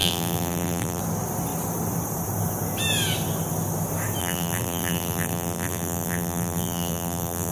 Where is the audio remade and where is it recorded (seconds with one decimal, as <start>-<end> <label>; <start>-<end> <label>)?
0.0-1.0 remade; 1.0-4.2 recorded; 4.2-7.5 remade